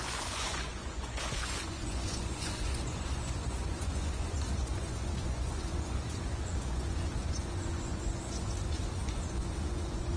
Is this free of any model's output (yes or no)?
no